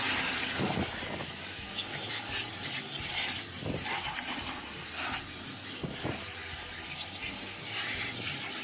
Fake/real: real